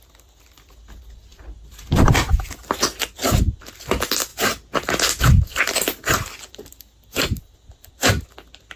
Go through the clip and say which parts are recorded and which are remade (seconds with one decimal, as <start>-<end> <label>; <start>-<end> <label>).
0.0-8.8 recorded